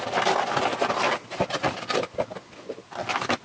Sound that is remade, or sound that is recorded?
recorded